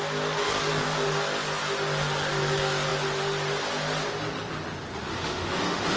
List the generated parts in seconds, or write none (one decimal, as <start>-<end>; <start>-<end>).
5.1-6.0

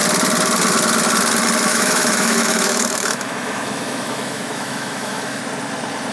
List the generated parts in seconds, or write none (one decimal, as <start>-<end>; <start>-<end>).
1.7-5.4